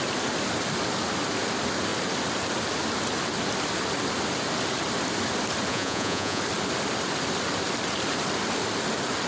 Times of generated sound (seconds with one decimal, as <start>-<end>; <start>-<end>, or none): 5.7-6.4